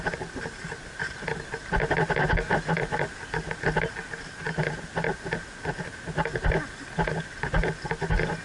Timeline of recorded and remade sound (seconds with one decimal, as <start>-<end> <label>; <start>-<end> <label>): 0.0-8.4 recorded